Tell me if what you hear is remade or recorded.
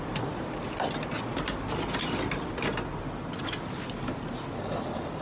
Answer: recorded